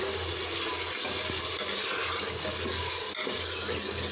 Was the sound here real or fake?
real